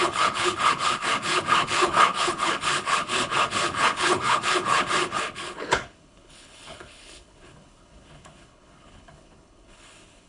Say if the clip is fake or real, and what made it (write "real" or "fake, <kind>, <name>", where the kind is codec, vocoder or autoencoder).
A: fake, codec, HILCodec